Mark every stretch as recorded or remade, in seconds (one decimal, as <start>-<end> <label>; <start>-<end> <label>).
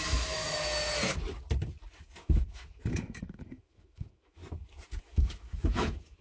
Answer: 0.0-0.4 remade; 0.4-2.0 recorded; 2.0-4.4 remade; 4.4-5.0 recorded; 5.0-6.2 remade